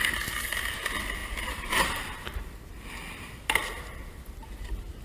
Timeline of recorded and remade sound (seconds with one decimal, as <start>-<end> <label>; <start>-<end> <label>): 0.0-1.2 recorded; 1.2-2.4 remade; 2.4-5.0 recorded